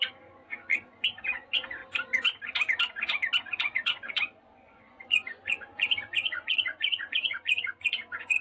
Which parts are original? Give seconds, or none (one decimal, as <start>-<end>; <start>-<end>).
1.8-3.4